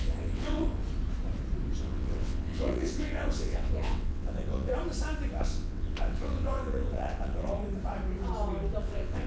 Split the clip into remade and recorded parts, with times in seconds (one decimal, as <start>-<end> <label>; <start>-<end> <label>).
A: 0.0-0.8 remade; 0.8-1.8 recorded; 1.8-4.7 remade; 4.7-5.4 recorded; 5.4-7.6 remade; 7.6-8.8 recorded; 8.8-9.3 remade